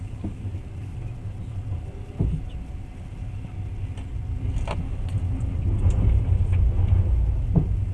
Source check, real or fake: real